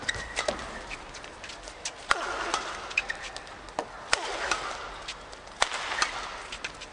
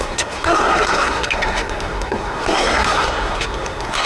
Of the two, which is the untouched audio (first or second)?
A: first